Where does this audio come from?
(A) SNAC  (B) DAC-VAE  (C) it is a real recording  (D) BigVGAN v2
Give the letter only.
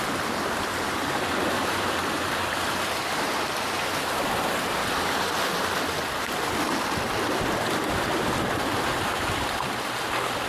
C